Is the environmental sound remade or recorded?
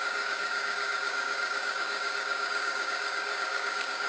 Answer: remade